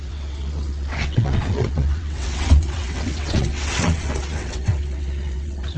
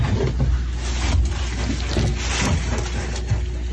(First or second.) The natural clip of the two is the second